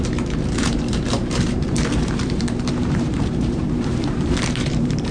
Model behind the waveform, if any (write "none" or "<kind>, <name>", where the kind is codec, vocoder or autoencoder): vocoder, BigVGAN v2